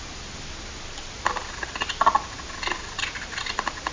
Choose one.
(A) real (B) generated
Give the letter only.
A